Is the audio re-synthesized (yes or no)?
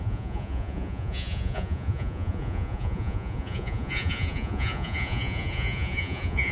yes